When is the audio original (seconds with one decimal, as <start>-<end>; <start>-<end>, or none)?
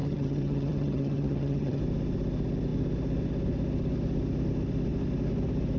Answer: 1.8-5.8